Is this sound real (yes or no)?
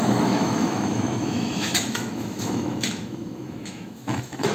no